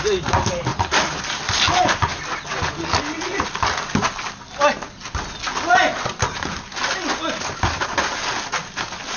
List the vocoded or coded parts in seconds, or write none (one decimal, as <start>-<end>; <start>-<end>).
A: 0.7-1.2